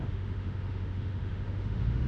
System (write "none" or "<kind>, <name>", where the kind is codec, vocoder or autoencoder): autoencoder, DAC-VAE